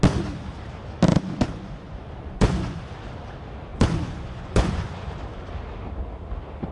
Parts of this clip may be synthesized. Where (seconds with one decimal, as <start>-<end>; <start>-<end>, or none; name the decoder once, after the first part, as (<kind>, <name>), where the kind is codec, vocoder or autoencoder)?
1.1-2.8 (vocoder, Vocos); 3.7-5.1